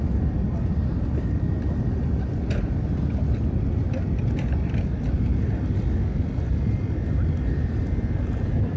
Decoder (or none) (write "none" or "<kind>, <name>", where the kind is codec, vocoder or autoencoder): none